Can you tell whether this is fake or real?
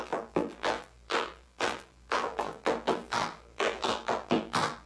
fake